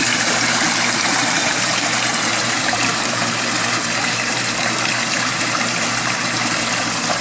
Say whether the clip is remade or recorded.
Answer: remade